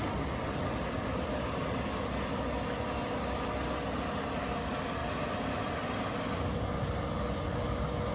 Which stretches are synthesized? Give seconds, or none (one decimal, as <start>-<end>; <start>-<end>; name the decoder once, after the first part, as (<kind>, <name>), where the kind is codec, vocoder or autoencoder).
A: none